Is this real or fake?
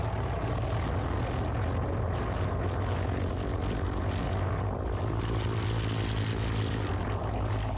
real